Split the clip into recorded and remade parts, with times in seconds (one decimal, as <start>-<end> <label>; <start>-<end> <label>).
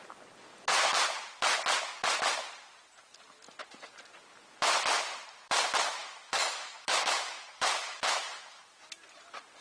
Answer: 0.0-6.0 recorded; 6.0-8.6 remade; 8.6-9.6 recorded